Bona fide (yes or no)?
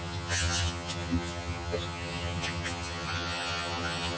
no